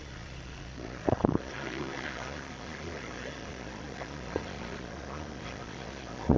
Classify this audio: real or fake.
fake